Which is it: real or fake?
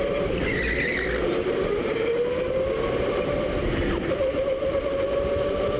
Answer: real